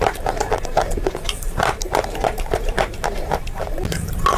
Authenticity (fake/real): fake